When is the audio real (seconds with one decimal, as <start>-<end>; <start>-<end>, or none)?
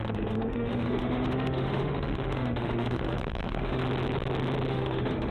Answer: 3.8-4.7